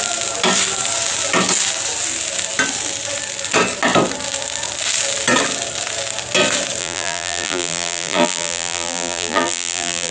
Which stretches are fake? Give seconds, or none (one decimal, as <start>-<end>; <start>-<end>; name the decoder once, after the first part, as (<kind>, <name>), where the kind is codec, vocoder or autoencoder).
6.8-10.1 (vocoder, BigVGAN v2)